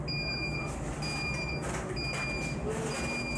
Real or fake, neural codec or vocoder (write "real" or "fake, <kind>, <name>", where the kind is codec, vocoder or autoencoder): real